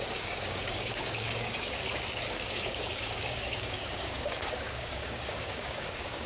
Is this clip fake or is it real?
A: fake